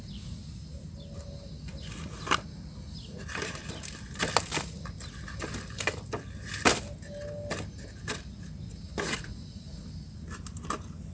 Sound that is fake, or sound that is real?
real